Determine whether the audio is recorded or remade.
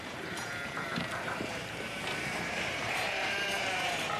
remade